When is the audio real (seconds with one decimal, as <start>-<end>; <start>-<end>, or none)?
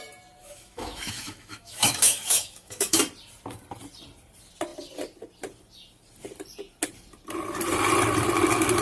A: 0.0-0.4; 3.0-8.8